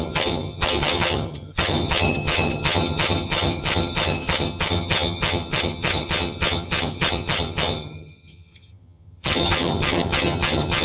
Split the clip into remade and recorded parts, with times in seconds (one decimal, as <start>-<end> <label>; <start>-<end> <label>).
0.0-10.8 remade